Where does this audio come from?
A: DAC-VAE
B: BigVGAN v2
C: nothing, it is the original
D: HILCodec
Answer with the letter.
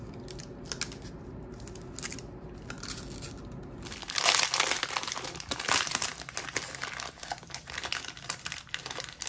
C